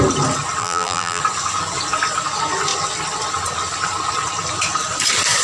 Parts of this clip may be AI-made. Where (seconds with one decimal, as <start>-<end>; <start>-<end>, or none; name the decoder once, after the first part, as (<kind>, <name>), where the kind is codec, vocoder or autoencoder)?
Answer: 0.6-1.2 (vocoder, BigVGAN v2)